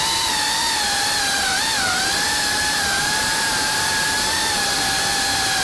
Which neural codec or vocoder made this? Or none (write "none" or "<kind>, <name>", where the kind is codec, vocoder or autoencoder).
vocoder, BigVGAN v2